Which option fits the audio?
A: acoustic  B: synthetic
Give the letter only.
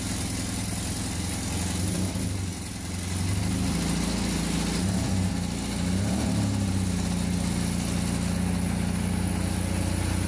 A